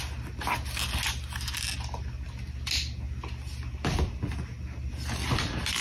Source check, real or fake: real